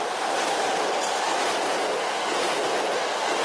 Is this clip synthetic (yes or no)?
no